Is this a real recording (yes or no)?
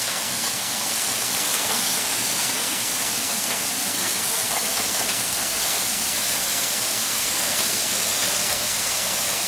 no